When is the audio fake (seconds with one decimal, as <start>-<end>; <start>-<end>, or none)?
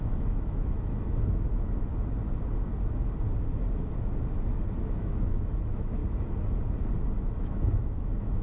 0.0-1.9; 5.0-6.0; 7.3-8.4